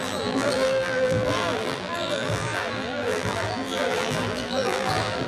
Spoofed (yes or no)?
yes